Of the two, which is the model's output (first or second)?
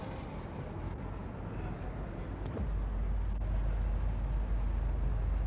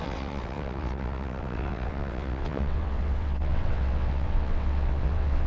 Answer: second